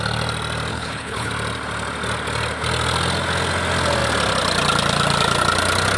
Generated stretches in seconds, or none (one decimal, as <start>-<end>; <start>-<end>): 0.7-1.3